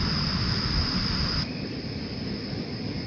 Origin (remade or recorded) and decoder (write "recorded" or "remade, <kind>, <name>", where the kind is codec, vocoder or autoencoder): recorded